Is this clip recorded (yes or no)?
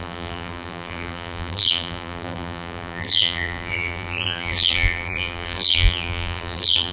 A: no